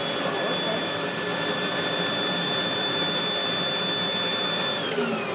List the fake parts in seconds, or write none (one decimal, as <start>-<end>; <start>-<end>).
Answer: 1.3-3.2; 4.3-4.8